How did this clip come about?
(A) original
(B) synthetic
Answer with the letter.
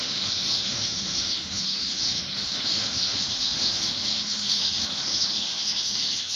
B